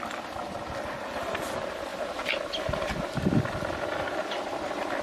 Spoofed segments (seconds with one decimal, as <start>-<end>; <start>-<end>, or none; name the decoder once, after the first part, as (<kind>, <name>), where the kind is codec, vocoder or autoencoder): none